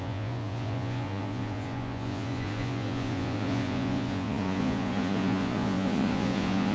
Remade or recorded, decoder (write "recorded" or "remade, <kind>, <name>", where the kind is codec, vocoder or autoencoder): remade, vocoder, Vocos